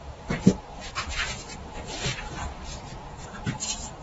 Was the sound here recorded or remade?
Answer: recorded